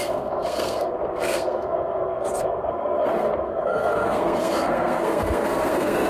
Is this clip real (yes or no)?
no